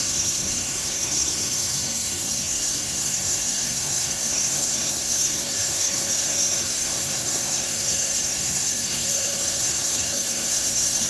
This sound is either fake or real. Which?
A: fake